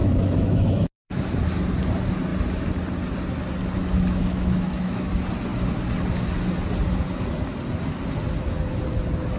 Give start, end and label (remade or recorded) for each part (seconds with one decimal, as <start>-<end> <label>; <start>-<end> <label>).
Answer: 0.0-1.4 remade; 1.4-4.2 recorded; 4.2-5.1 remade; 5.1-9.4 recorded